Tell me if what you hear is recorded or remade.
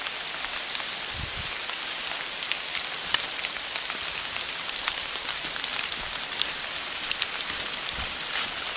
recorded